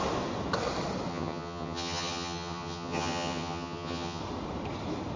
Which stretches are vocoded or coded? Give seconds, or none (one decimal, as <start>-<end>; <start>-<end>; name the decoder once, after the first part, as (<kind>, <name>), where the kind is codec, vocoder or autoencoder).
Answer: 1.1-4.2 (vocoder, HiFi-GAN)